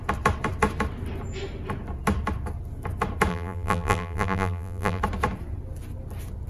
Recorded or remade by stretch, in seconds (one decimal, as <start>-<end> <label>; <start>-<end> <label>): 0.0-3.3 recorded; 3.3-5.0 remade; 5.0-6.5 recorded